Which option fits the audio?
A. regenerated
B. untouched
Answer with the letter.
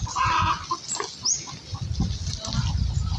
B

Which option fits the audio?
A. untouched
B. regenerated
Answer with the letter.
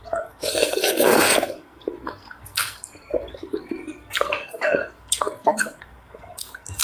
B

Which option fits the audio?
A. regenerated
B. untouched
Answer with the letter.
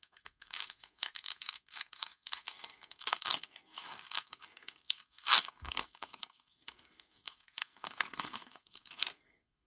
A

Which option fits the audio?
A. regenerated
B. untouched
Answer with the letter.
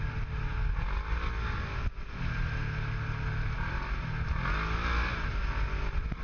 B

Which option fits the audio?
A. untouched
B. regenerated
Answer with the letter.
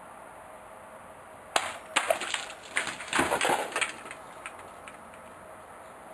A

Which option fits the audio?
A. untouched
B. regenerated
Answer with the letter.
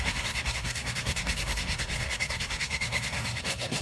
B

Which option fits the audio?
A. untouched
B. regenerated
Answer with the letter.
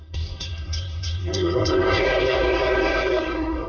B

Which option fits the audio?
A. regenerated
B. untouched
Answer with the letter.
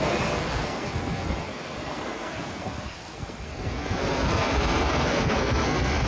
A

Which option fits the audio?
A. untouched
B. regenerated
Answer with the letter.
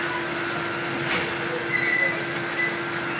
A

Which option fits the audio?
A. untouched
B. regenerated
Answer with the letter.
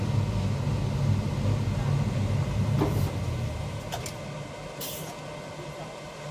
A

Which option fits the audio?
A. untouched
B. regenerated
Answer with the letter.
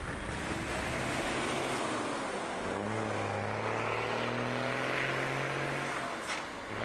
A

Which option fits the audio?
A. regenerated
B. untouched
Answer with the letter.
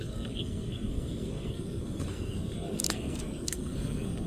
A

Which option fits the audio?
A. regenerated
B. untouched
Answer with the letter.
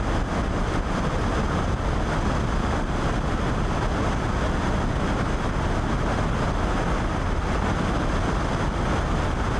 B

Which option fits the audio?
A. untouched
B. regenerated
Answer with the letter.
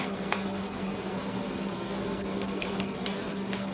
B